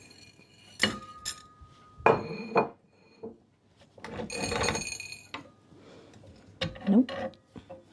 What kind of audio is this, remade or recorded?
recorded